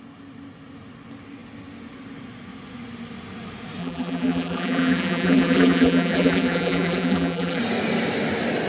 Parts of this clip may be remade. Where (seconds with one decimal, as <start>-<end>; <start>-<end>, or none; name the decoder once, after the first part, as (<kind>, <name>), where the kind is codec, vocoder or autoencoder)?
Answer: 3.8-7.6 (vocoder, BigVGAN v2)